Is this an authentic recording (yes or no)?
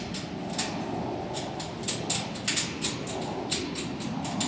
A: yes